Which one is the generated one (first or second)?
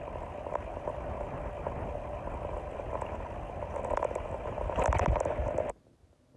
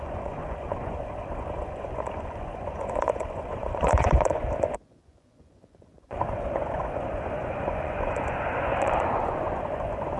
second